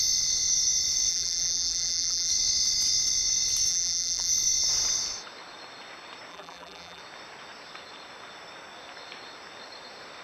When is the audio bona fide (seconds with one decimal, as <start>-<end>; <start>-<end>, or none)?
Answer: 0.0-1.1; 2.3-3.7; 4.3-6.3; 7.0-10.2